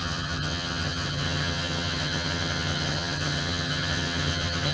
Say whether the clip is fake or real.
fake